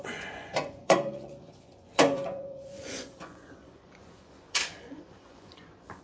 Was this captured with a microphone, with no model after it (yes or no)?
no